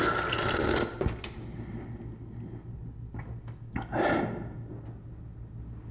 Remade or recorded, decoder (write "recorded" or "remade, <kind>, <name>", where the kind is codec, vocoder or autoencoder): recorded